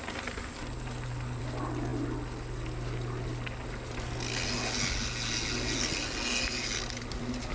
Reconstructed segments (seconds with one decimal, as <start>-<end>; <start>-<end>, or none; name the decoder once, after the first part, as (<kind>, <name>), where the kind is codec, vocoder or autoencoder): none